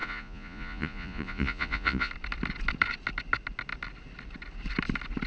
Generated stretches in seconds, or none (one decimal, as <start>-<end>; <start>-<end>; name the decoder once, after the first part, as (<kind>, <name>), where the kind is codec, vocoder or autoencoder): 0.0-2.1 (vocoder, Vocos)